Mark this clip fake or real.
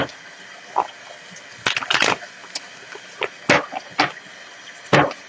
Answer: real